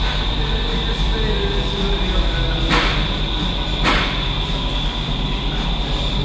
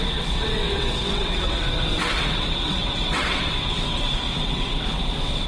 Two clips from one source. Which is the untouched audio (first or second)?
first